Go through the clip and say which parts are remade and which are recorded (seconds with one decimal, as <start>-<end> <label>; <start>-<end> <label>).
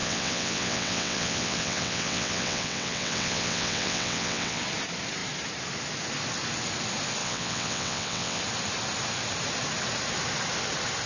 0.0-4.6 remade; 4.6-7.2 recorded; 7.2-8.4 remade; 8.4-11.1 recorded